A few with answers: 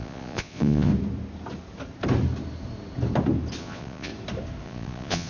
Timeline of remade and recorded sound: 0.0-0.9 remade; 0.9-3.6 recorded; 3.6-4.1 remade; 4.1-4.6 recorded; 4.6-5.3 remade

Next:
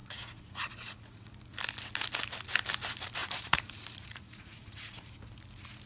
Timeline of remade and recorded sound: 0.0-1.3 remade; 1.3-3.2 recorded; 3.2-5.3 remade; 5.3-5.9 recorded